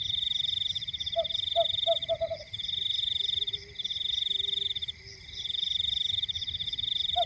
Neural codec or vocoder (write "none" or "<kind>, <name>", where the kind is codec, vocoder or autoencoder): none